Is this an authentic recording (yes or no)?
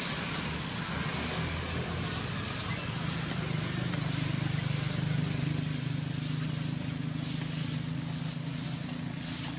yes